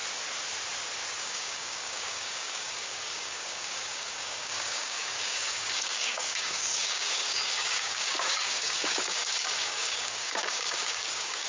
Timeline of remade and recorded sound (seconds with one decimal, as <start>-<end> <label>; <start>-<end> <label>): 0.0-1.2 recorded; 1.2-11.5 remade